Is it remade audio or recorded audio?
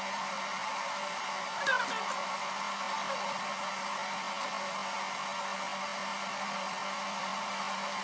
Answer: recorded